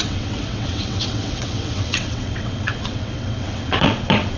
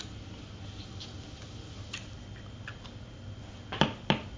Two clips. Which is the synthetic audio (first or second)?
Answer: first